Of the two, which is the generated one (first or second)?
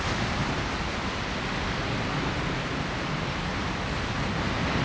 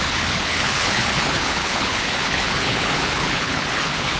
second